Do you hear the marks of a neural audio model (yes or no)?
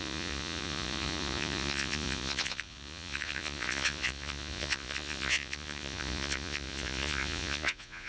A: yes